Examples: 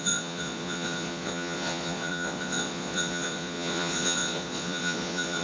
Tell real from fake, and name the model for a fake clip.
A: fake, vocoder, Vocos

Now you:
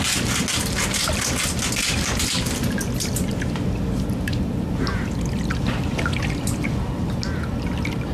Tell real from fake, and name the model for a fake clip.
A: real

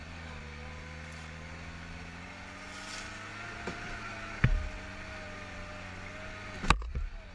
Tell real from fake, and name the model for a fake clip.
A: real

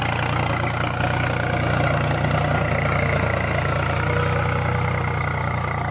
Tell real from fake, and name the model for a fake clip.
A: real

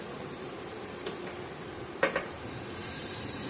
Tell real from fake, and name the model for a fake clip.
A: fake, vocoder, BigVGAN v2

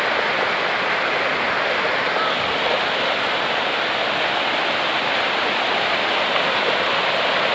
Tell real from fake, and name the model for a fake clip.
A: real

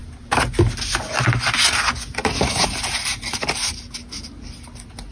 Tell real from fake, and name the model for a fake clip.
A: real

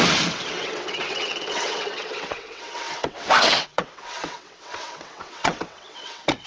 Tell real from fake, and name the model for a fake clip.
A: fake, vocoder, WaveNeXt